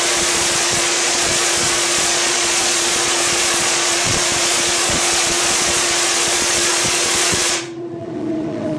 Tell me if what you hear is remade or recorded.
remade